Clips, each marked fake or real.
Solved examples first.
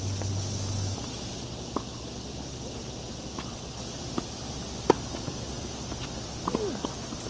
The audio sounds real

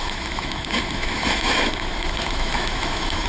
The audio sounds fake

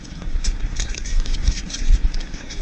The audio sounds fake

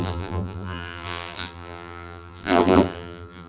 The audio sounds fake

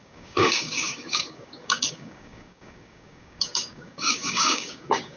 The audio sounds fake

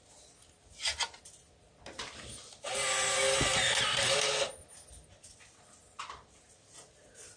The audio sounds real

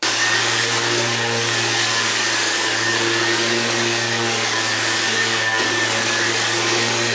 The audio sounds fake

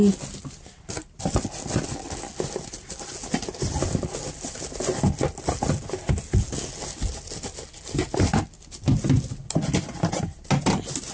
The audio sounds real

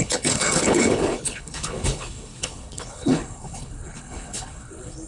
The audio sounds fake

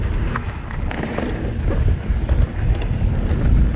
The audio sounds real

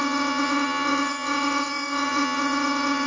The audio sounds fake